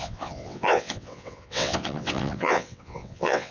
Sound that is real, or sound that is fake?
fake